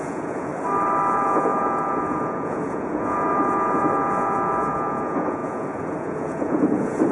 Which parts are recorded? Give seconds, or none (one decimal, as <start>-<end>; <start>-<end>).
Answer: 0.5-1.1